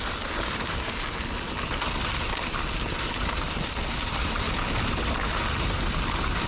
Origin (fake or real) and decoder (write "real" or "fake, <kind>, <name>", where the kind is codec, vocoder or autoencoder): real